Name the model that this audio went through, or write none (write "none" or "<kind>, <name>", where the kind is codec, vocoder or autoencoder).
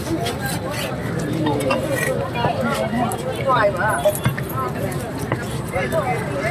none